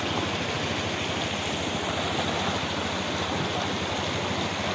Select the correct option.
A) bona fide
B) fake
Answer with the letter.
A